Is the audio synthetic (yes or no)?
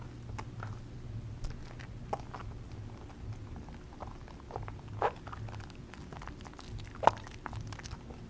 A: no